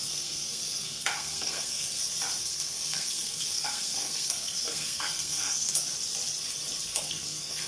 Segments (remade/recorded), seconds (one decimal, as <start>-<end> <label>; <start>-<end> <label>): 0.0-2.0 remade; 2.0-2.4 recorded; 2.4-5.8 remade; 5.8-6.9 recorded; 6.9-7.7 remade